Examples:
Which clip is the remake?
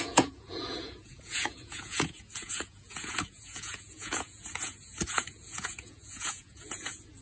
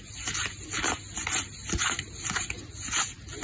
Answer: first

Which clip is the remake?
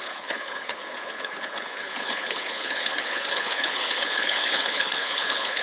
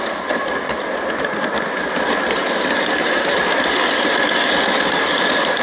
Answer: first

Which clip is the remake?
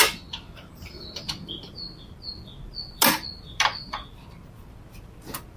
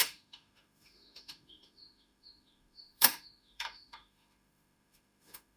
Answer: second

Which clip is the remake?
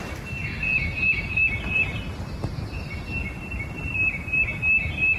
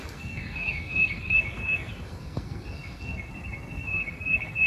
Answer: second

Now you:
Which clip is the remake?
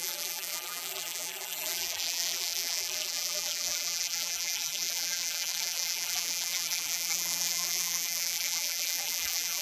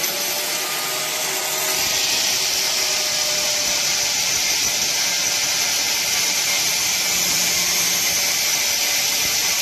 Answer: first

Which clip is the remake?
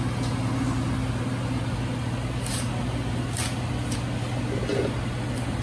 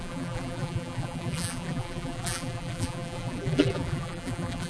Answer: second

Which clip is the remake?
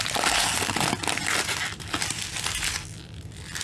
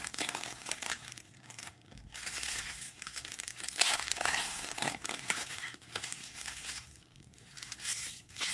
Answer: second